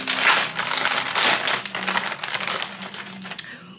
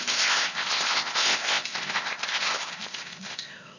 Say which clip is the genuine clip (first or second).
first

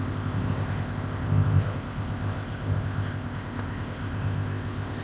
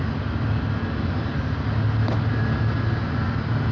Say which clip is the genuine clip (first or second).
second